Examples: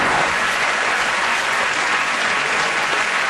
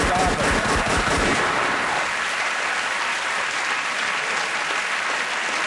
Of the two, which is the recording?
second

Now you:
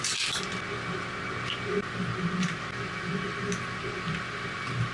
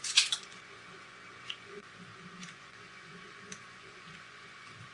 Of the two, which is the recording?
first